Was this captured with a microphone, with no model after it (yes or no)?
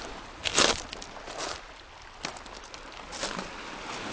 yes